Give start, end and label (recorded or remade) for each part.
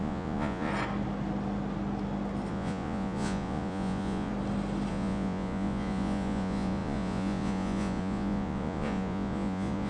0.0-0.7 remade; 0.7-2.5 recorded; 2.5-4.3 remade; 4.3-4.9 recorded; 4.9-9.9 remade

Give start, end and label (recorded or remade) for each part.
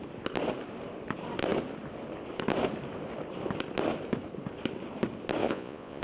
0.0-5.4 recorded; 5.4-6.0 remade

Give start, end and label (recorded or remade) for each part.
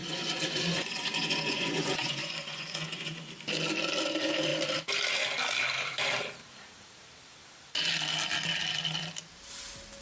0.0-3.3 remade; 3.3-10.0 recorded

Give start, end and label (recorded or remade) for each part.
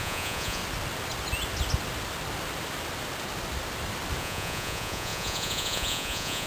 0.0-0.6 remade; 0.6-4.2 recorded; 4.2-6.5 remade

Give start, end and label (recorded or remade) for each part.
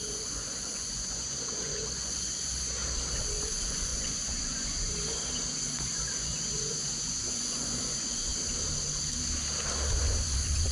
0.0-2.8 remade; 2.8-3.3 recorded; 3.3-8.3 remade; 8.3-10.0 recorded; 10.0-10.7 remade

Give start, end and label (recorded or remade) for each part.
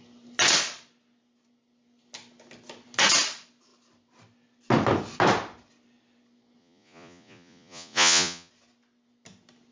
0.0-6.6 recorded; 6.6-8.5 remade; 8.5-9.7 recorded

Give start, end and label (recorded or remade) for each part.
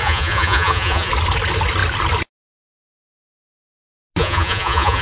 0.0-1.1 remade; 1.1-4.2 recorded; 4.2-5.0 remade